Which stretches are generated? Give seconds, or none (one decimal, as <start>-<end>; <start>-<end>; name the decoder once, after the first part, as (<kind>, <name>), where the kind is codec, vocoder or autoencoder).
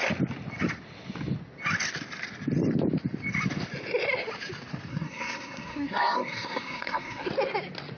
4.9-7.3 (codec, SNAC)